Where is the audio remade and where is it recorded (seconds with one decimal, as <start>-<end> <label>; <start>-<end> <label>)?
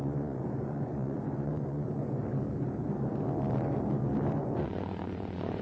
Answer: 0.0-2.2 remade; 2.2-4.4 recorded; 4.4-5.6 remade